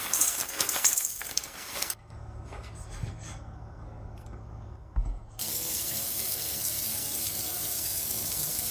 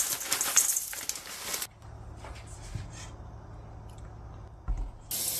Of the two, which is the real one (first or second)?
second